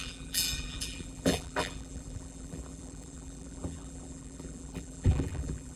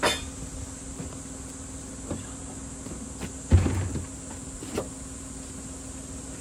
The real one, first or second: second